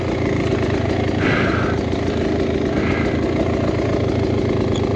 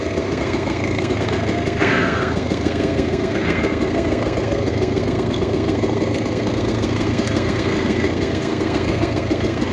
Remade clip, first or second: second